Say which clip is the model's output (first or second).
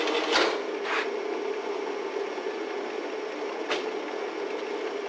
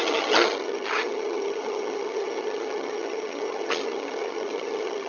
second